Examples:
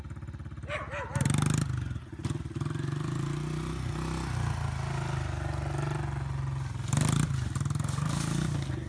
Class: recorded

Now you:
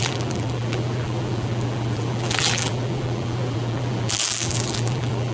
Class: remade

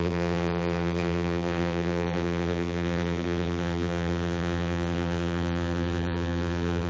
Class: remade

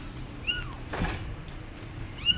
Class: remade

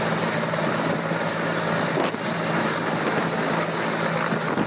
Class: recorded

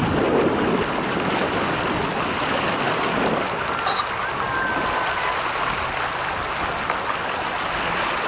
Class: recorded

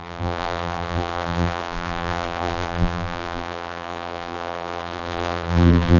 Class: remade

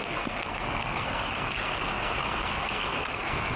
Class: remade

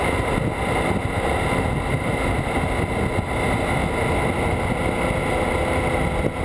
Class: recorded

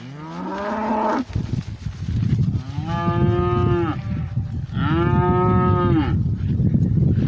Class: recorded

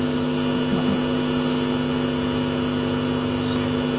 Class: recorded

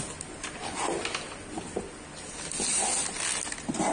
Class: recorded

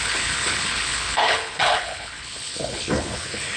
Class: remade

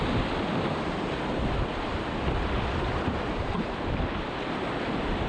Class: remade